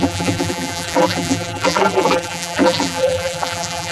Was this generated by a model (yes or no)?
yes